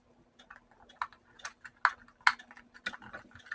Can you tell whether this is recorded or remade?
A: recorded